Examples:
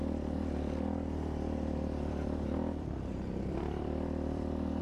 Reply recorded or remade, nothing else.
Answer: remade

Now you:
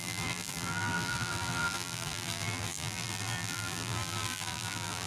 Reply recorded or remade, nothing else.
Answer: remade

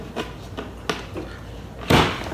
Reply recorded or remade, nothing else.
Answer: recorded